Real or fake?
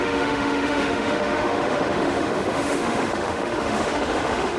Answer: fake